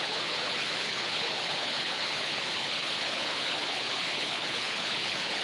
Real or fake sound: fake